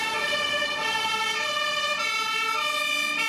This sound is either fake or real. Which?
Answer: real